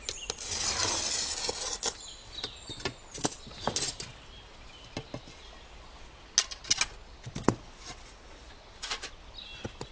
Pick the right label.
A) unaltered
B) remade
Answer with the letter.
A